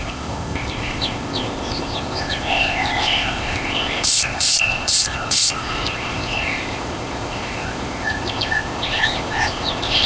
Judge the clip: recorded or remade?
remade